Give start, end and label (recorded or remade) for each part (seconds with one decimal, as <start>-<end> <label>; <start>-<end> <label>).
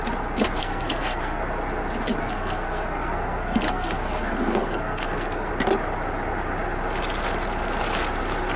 0.0-0.6 recorded; 0.6-1.4 remade; 1.4-2.2 recorded; 2.2-5.5 remade; 5.5-8.6 recorded